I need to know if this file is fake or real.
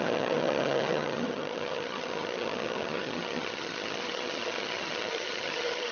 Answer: fake